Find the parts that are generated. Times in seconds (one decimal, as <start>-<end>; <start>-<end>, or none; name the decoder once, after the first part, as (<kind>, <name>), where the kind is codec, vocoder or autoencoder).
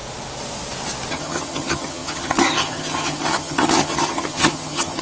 1.1-5.0 (vocoder, HiFi-GAN)